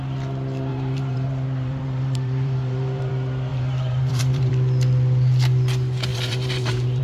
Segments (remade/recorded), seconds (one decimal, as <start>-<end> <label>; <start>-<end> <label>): 0.0-0.7 recorded; 0.7-3.1 remade; 3.1-3.5 recorded; 3.5-4.5 remade; 4.5-6.1 recorded; 6.1-7.0 remade